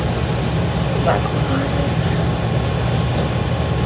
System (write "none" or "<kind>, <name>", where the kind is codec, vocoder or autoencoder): none